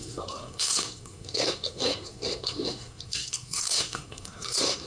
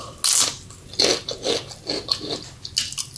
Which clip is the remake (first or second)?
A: first